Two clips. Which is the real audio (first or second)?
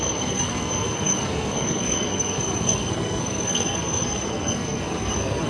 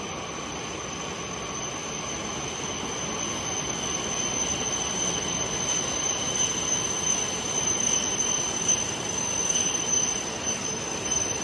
second